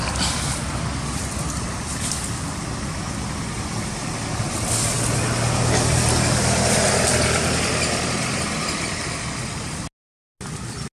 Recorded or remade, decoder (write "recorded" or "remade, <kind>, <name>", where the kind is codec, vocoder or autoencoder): recorded